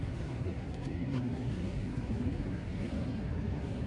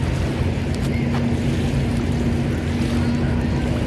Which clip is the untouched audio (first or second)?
second